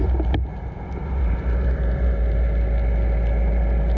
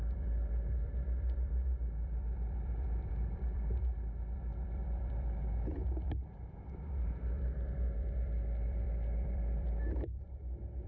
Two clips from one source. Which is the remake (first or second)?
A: second